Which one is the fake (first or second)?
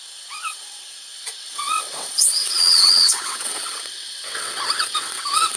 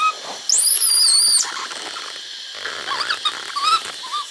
first